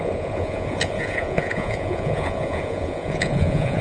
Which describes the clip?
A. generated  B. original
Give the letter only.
A